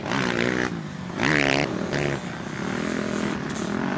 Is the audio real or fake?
real